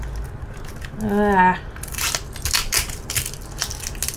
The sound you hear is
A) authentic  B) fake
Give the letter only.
A